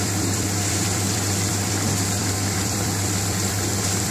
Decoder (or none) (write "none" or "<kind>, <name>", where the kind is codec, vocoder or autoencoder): vocoder, BigVGAN v2